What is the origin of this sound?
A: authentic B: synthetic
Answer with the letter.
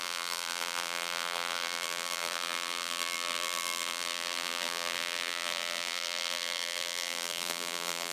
B